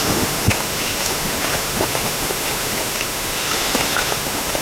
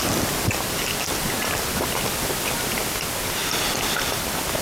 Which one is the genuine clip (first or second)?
second